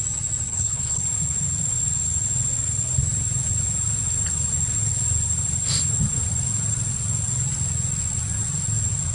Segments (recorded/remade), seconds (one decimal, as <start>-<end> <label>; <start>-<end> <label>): 0.0-0.5 recorded; 0.5-1.0 remade; 1.0-9.1 recorded

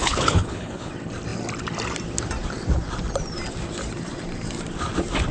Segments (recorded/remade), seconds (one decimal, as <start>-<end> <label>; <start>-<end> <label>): 0.0-0.9 remade; 0.9-5.3 recorded

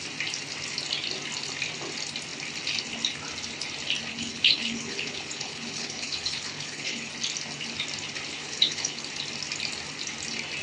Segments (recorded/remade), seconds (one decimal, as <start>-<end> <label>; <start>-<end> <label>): 0.0-4.1 recorded; 4.1-7.1 remade; 7.1-8.4 recorded; 8.4-9.0 remade; 9.0-10.6 recorded